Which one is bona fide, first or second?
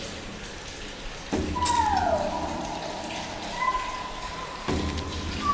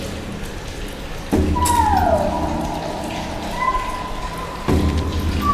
second